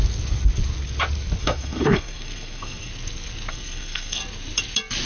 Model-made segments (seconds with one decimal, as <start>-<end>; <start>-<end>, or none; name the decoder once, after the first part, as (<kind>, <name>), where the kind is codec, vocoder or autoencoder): 1.4-2.9 (codec, SNAC); 3.5-4.2

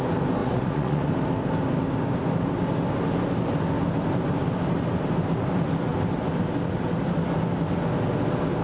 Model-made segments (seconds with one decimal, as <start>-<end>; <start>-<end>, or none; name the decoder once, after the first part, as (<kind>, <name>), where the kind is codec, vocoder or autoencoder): 0.4-1.1 (vocoder, Vocos)

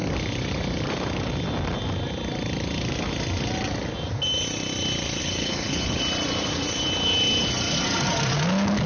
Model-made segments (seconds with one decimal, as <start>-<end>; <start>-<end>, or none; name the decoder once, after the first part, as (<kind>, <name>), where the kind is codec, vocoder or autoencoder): 5.2-6.0 (codec, HILCodec)

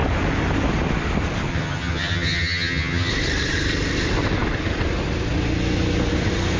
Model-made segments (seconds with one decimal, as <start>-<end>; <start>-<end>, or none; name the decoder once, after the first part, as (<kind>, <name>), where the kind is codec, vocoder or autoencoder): 1.5-3.1 (vocoder, HiFi-GAN)